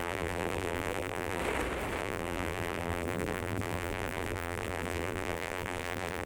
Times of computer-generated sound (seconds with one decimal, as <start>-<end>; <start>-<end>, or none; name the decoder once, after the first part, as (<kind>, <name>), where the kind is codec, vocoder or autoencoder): 0.0-1.4 (vocoder, BigVGAN v2); 2.0-6.3